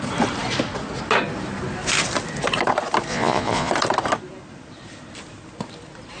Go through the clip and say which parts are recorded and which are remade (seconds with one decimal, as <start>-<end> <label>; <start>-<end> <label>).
0.0-3.1 recorded; 3.1-3.7 remade; 3.7-6.2 recorded